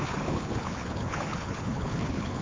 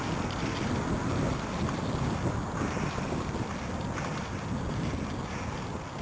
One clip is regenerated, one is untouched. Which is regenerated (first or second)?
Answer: first